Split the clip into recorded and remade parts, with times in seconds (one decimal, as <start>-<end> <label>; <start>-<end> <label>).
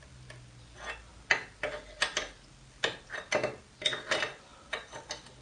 0.0-5.4 recorded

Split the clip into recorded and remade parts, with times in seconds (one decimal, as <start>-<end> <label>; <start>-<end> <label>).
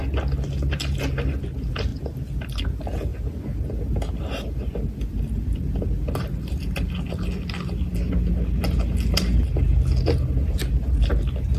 0.0-11.6 recorded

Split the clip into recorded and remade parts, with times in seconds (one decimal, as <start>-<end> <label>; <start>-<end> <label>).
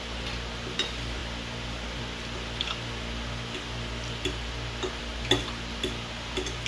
0.0-6.7 recorded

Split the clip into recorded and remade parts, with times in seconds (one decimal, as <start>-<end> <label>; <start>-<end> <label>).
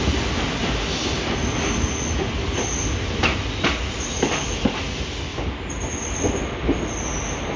0.0-5.3 recorded; 5.3-6.3 remade; 6.3-7.6 recorded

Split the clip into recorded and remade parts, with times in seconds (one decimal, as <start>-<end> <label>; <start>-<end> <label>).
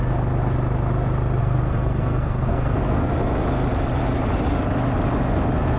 0.0-1.4 recorded; 1.4-3.1 remade; 3.1-5.8 recorded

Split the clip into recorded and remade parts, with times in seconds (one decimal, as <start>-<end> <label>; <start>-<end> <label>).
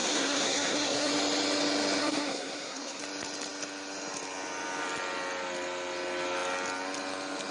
0.0-1.1 remade; 1.1-2.0 recorded; 2.0-3.0 remade; 3.0-7.5 recorded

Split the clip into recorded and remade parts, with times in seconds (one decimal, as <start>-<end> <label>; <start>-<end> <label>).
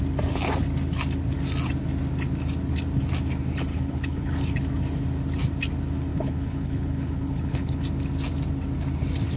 0.0-3.7 recorded; 3.7-4.4 remade; 4.4-6.1 recorded; 6.1-7.8 remade; 7.8-9.4 recorded